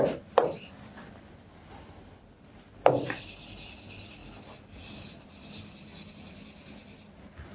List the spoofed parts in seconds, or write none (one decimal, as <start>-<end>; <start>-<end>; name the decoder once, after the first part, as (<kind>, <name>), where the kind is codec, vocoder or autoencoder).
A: none